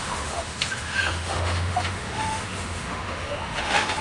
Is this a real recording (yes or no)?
no